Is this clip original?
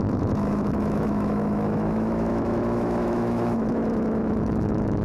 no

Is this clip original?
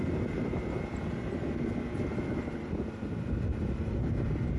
yes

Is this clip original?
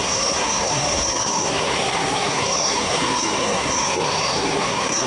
no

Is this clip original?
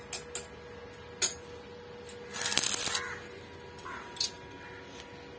yes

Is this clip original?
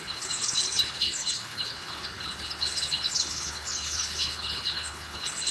no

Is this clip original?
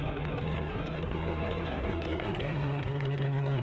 no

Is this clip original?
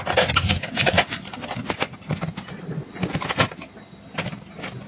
yes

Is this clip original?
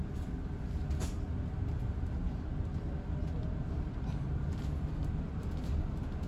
yes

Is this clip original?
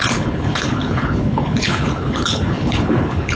no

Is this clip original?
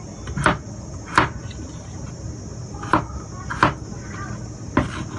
yes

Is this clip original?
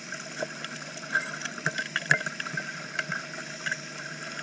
yes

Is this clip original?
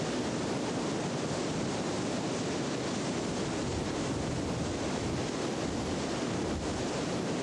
yes